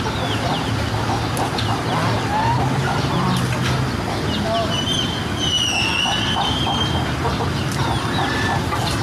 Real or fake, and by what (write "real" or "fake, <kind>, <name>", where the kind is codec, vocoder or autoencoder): real